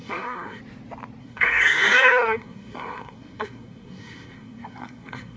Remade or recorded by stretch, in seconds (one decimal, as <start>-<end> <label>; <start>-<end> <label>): 0.0-0.6 remade; 0.6-1.2 recorded; 1.2-5.4 remade